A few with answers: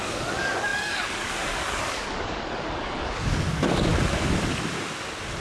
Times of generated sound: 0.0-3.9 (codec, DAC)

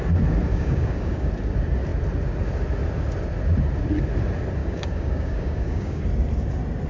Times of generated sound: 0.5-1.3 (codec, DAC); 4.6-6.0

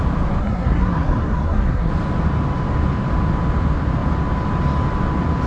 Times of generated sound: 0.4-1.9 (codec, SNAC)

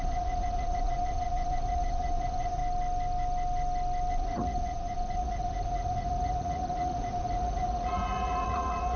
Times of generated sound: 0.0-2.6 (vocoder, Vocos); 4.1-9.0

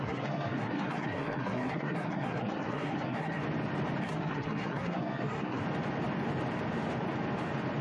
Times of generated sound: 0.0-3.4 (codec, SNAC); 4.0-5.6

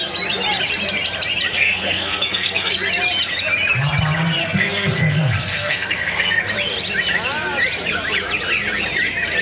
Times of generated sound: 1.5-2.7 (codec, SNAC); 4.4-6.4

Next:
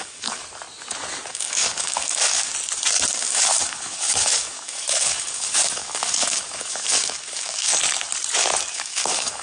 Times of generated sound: 0.0-0.4 (codec, DAC); 1.3-2.5; 3.1-7.7; 8.7-9.4